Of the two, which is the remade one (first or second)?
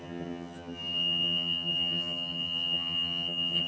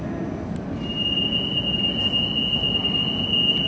first